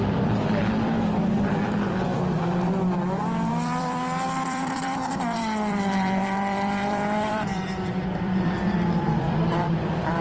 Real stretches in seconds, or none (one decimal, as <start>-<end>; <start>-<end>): 2.1-3.5